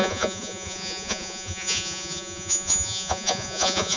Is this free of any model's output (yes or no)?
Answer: no